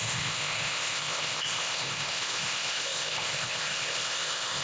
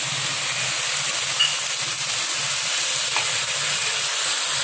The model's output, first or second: first